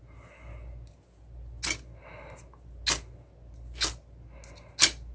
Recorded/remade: recorded